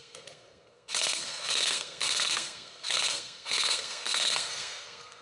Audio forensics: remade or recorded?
remade